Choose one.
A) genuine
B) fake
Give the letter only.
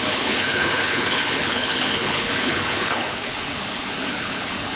B